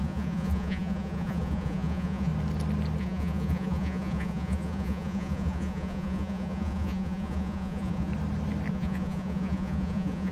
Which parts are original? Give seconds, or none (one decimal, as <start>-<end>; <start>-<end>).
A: 2.3-3.0; 8.1-8.7